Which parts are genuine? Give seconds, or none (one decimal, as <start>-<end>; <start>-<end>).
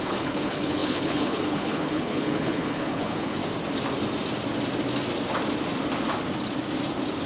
3.4-7.3